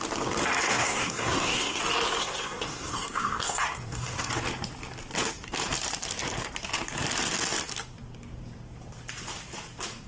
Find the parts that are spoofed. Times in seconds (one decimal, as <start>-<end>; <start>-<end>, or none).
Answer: 0.7-1.8; 2.2-4.3